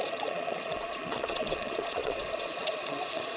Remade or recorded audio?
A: remade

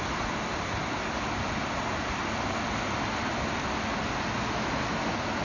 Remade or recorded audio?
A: recorded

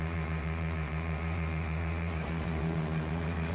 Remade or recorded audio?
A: remade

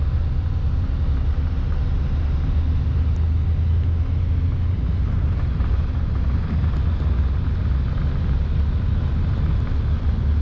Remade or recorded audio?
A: recorded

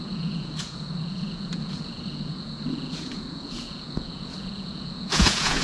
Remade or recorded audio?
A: remade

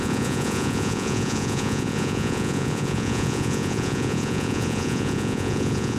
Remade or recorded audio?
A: remade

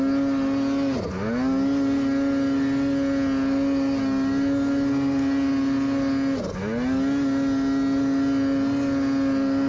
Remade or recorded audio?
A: recorded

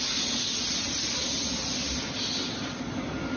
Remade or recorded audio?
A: recorded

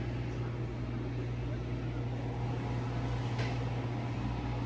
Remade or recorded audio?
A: recorded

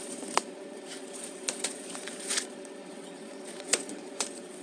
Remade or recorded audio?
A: remade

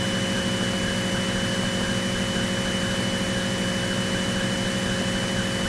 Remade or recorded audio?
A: recorded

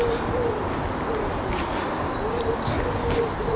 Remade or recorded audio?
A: recorded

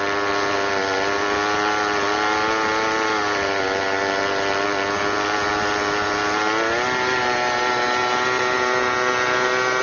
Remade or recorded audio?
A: recorded